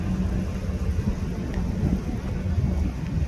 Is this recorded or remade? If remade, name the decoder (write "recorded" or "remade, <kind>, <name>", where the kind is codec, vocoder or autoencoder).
recorded